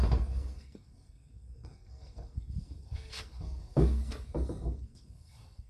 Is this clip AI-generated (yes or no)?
yes